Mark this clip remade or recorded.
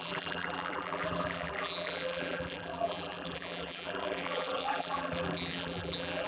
remade